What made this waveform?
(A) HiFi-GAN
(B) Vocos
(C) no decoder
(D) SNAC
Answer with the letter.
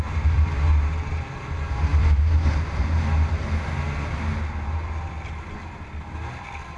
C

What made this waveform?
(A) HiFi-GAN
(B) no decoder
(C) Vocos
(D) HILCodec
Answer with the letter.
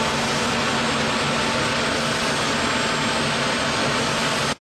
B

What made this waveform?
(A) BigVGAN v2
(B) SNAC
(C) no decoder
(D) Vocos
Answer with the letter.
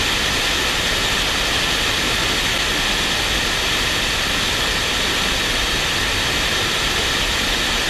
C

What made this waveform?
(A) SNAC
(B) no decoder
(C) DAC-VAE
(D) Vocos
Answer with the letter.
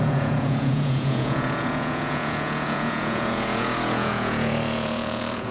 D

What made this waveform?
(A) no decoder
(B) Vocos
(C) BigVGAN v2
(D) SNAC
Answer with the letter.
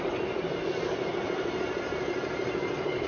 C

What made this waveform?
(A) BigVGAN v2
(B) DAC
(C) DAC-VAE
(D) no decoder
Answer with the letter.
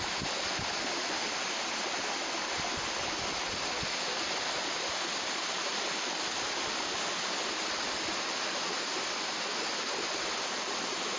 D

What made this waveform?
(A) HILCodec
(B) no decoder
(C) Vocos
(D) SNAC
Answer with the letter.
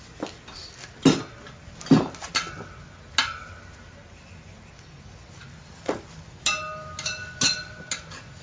B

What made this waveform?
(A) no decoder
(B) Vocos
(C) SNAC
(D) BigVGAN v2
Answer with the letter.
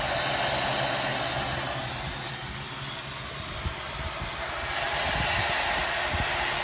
A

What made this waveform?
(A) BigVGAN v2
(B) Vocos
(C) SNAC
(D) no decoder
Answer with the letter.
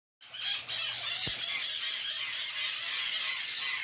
D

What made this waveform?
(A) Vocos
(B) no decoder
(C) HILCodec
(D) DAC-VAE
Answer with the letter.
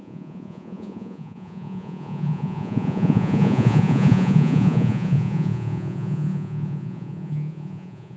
A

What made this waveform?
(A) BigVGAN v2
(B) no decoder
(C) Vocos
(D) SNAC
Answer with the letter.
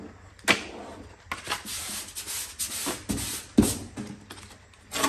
B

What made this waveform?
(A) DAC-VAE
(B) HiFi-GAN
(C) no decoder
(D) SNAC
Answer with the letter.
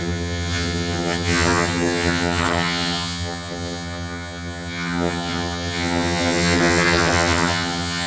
B